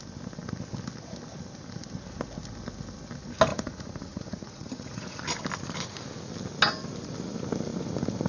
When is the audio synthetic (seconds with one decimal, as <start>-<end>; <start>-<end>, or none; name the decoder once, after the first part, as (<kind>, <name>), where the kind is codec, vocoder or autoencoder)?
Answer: 3.5-5.2 (vocoder, Vocos)